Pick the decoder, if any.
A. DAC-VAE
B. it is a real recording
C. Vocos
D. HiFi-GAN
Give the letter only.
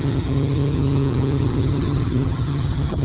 D